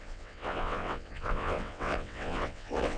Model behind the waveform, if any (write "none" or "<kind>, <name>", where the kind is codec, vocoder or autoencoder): vocoder, WaveNeXt